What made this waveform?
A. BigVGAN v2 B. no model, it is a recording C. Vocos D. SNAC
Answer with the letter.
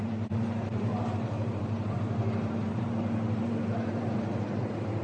A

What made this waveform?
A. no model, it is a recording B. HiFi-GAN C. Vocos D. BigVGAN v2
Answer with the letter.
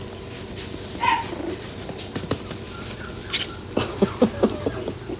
A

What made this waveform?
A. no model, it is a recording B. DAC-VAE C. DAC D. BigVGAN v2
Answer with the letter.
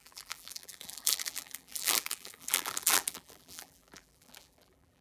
D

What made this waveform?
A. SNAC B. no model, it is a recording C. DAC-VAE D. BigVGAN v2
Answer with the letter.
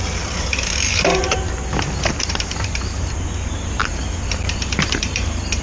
D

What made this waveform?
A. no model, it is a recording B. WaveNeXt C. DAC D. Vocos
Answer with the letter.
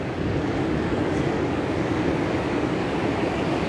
C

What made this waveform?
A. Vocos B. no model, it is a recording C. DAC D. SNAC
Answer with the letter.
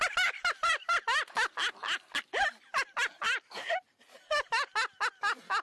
B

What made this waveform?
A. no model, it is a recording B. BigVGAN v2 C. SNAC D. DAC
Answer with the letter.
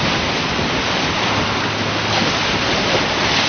A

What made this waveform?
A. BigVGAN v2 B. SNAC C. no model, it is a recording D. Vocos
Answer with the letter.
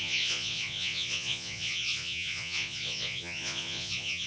D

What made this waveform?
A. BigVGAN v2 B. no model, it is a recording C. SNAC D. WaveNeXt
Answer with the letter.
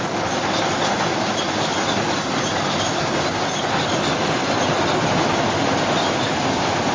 B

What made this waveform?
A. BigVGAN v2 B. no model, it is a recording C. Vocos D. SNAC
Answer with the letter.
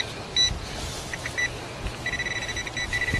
B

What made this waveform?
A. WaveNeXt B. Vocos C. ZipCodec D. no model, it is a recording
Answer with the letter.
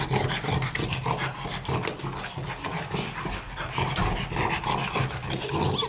D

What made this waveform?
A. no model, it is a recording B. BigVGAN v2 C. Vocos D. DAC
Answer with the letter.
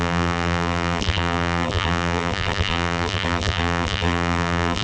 B